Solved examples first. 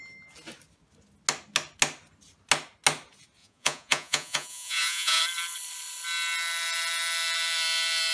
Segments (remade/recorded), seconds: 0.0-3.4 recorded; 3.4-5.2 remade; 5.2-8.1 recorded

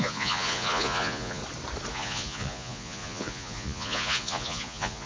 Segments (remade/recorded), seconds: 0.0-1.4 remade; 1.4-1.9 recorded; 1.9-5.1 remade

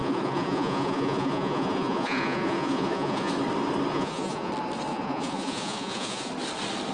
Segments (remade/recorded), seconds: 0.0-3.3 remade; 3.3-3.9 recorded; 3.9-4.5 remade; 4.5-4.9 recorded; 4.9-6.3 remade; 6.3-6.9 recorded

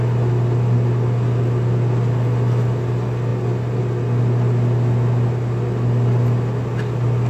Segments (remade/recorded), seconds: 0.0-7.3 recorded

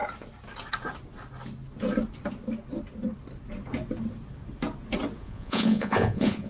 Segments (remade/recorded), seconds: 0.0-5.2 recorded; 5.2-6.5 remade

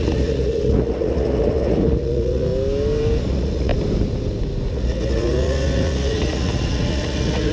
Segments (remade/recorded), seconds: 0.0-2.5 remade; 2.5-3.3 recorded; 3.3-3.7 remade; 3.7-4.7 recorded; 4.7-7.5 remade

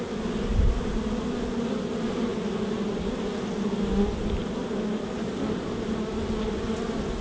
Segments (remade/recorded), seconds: 0.0-7.2 recorded